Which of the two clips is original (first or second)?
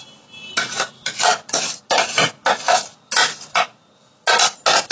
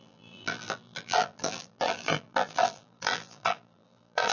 first